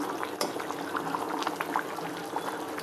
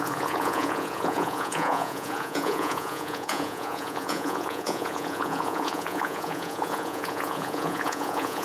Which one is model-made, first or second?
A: second